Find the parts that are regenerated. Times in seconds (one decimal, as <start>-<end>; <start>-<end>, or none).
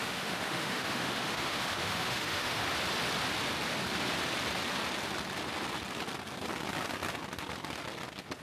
0.0-2.6